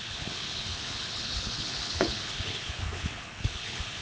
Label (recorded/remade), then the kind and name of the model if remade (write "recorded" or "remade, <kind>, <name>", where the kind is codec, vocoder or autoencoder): remade, codec, HILCodec